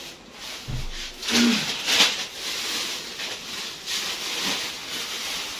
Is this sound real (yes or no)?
yes